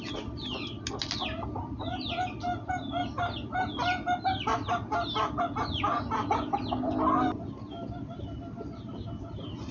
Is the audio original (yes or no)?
yes